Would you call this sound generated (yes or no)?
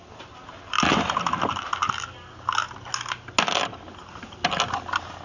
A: no